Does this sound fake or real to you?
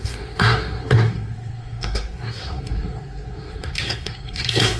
fake